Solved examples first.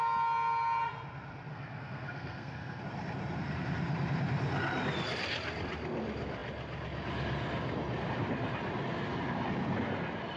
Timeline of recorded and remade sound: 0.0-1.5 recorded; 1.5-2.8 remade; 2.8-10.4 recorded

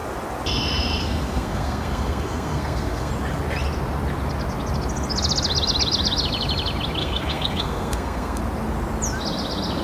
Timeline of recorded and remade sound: 0.0-1.0 recorded; 1.0-3.1 remade; 3.1-7.0 recorded; 7.0-8.4 remade; 8.4-9.8 recorded

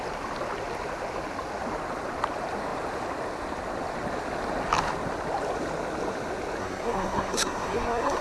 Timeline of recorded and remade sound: 0.0-6.6 recorded; 6.6-8.2 remade

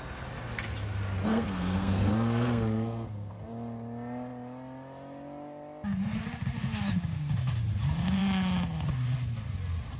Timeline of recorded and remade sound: 0.0-1.3 recorded; 1.3-3.3 remade; 3.3-10.0 recorded